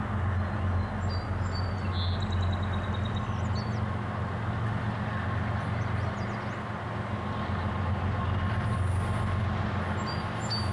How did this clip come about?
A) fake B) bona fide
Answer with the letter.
B